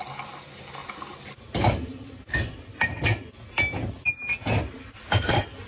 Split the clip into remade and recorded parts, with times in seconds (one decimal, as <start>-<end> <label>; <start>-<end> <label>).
0.0-5.7 recorded

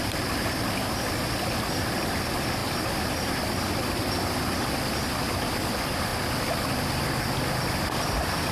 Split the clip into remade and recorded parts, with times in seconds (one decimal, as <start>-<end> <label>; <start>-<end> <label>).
0.0-8.5 recorded

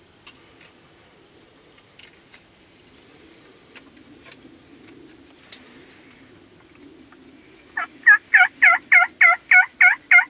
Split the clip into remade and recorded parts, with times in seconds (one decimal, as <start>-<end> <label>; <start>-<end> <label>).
0.0-10.3 recorded

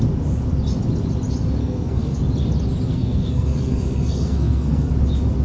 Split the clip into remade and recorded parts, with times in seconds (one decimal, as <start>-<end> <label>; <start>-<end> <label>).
0.0-1.6 recorded; 1.6-2.2 remade; 2.2-2.9 recorded; 2.9-4.9 remade; 4.9-5.4 recorded

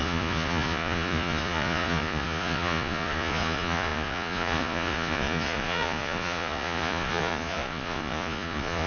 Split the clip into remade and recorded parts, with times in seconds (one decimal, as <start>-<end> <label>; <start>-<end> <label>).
0.0-8.9 remade

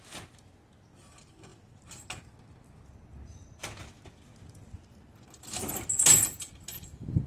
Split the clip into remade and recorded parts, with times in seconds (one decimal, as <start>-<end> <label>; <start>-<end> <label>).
0.0-7.3 recorded